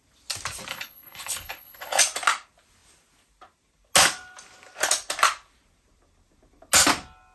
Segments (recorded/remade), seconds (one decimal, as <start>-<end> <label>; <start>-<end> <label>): 0.0-0.7 recorded; 0.7-2.0 remade; 2.0-7.3 recorded